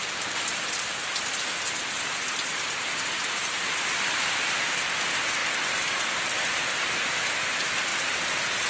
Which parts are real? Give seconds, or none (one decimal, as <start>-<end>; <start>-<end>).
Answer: 1.7-5.4; 6.7-7.9